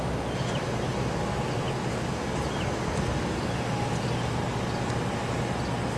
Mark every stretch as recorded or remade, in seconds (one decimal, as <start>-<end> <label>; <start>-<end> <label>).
0.0-6.0 recorded

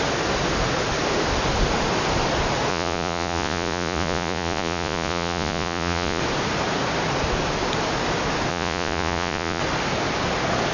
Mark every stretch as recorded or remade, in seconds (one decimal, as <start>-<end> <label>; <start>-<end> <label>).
0.0-2.7 recorded; 2.7-6.2 remade; 6.2-8.5 recorded; 8.5-9.6 remade; 9.6-10.7 recorded